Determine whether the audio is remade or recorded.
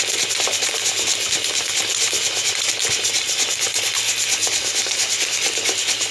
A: recorded